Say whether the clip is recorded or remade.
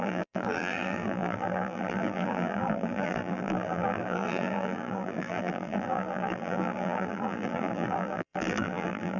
remade